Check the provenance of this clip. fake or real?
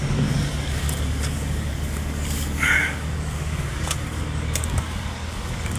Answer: fake